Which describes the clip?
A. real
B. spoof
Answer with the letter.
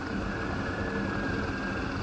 A